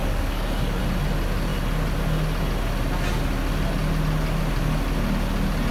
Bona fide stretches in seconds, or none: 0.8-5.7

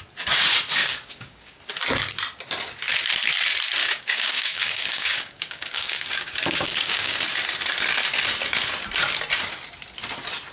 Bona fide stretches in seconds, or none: 0.0-0.8; 1.6-3.8; 7.2-10.5

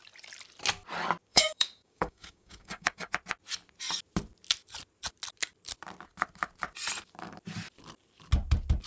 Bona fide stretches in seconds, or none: 0.0-1.3; 3.1-8.9

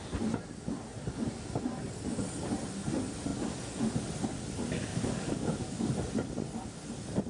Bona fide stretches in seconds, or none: 0.0-4.9; 5.9-7.3

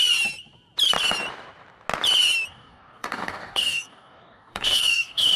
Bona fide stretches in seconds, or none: 0.0-2.5